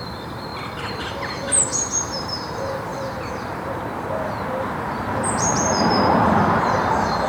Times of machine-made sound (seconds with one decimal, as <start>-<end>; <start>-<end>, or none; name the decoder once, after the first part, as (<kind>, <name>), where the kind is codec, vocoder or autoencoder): 0.0-0.5 (vocoder, BigVGAN v2); 1.3-7.3